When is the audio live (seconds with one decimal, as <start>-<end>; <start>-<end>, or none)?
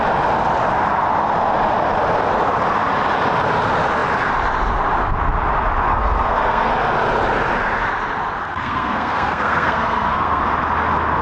0.0-5.9; 6.7-8.4; 10.4-11.2